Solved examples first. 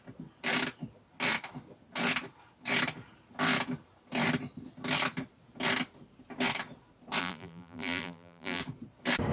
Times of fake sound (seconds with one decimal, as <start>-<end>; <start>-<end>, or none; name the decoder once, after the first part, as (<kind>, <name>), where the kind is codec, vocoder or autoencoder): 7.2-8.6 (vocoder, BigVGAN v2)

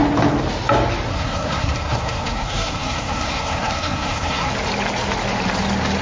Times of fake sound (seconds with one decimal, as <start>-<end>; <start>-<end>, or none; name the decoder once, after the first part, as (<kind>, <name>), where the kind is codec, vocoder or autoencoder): 1.1-4.5 (codec, SNAC)

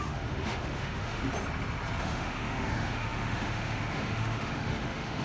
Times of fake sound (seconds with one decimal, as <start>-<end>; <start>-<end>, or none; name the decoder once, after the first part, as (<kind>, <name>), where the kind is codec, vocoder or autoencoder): 0.0-1.2 (autoencoder, DAC-VAE); 2.0-5.2

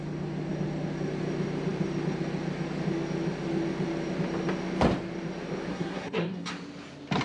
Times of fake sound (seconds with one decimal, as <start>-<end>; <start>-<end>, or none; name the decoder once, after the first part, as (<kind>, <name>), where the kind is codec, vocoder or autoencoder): 5.7-6.5 (codec, SNAC)

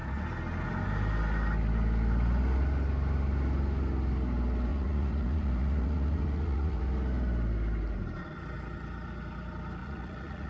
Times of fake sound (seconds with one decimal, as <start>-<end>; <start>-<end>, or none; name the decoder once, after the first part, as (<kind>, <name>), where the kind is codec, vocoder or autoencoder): 4.7-6.8 (vocoder, Vocos); 9.8-10.5